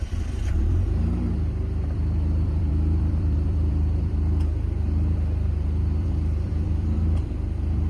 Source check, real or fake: fake